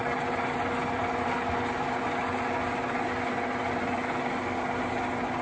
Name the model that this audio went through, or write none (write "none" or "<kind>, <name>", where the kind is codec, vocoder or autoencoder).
none